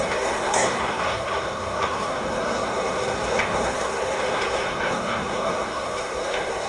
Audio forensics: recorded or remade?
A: remade